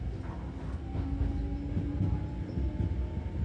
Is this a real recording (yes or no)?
yes